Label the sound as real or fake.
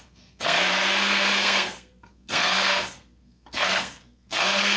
fake